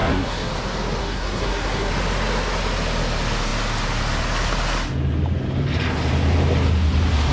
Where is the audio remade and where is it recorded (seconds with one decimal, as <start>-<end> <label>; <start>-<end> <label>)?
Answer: 0.0-0.5 remade; 0.5-1.0 recorded; 1.0-1.9 remade; 1.9-7.3 recorded